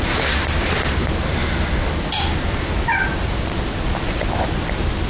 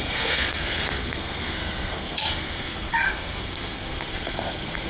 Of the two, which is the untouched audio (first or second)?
first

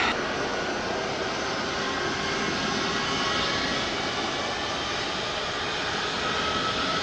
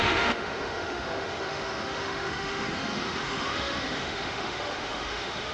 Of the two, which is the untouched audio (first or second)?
first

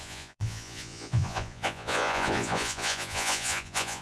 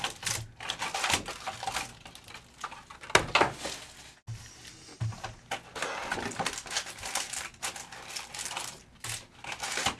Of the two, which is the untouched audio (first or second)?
second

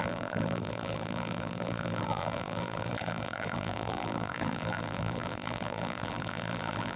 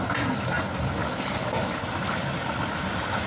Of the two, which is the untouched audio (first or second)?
second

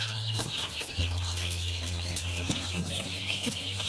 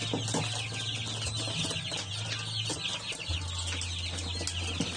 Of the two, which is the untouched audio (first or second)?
second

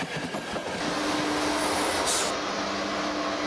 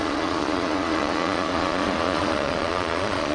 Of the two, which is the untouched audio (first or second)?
first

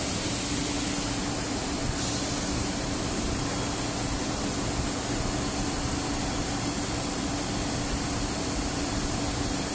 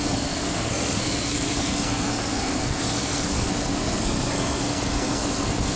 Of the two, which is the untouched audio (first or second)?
first